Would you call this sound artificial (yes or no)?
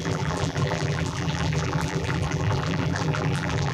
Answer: yes